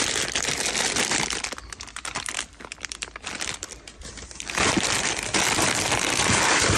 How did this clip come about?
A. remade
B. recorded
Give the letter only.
A